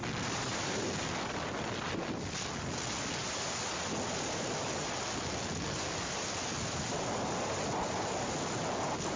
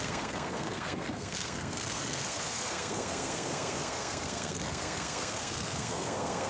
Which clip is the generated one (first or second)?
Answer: second